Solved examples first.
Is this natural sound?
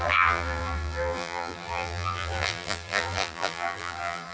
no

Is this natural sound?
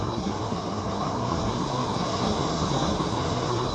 no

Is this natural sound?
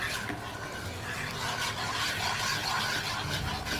yes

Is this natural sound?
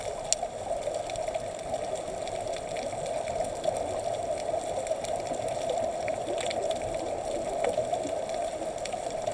yes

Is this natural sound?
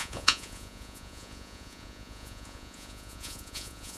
no